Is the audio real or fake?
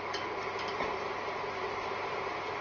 real